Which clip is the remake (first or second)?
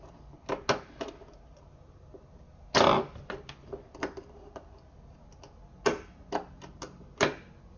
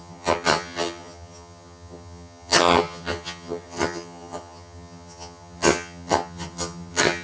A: second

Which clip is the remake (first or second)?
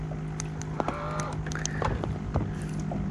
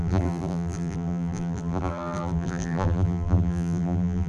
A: second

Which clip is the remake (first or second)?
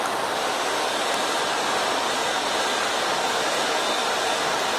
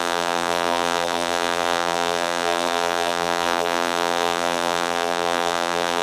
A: second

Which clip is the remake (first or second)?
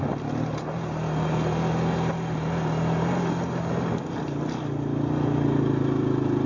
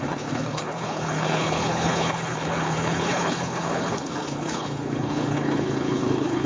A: second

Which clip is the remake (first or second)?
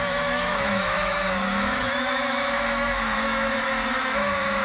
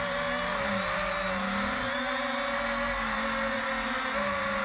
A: first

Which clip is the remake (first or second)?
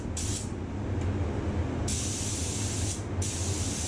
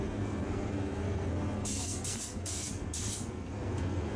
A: second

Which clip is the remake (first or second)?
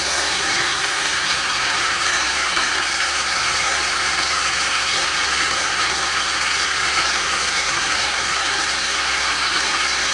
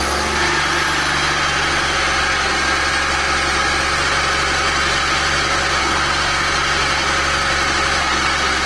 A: first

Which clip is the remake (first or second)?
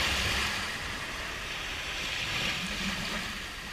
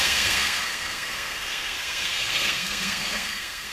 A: second